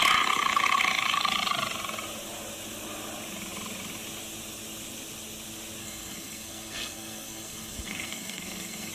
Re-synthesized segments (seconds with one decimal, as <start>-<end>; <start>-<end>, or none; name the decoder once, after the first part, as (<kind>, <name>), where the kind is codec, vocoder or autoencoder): 5.8-8.9 (codec, SNAC)